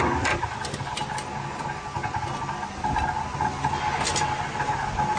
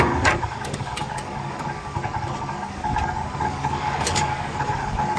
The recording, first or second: first